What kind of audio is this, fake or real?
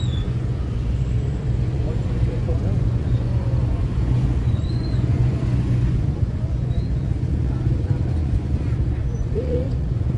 fake